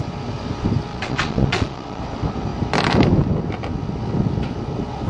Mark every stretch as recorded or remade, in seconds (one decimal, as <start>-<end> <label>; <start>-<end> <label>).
0.0-0.9 recorded; 0.9-2.0 remade; 2.0-5.1 recorded